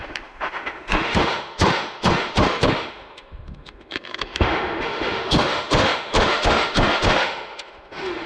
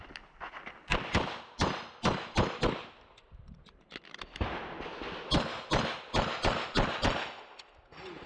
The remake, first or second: first